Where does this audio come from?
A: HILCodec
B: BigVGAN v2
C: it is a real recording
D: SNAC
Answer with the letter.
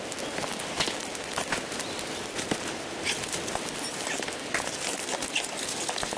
C